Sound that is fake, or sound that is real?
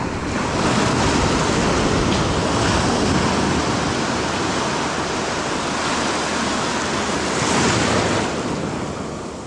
real